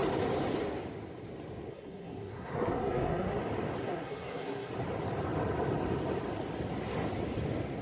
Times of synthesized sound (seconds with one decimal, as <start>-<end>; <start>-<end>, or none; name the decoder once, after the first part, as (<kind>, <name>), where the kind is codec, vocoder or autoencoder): 1.7-3.4 (codec, SNAC); 3.8-4.7